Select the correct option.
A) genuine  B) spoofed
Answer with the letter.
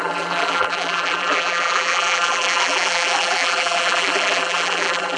B